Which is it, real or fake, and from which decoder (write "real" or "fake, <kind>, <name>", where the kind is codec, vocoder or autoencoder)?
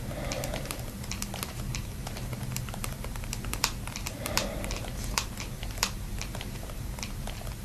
fake, vocoder, BigVGAN v2